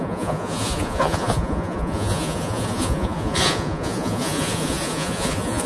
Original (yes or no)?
no